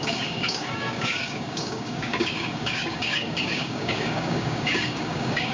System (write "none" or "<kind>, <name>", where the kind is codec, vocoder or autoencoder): codec, DAC